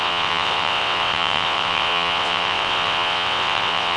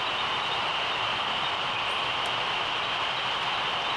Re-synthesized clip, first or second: first